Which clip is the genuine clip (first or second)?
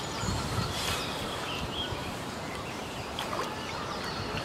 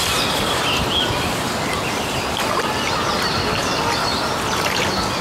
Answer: second